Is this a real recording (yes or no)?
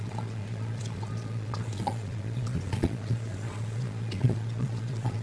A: no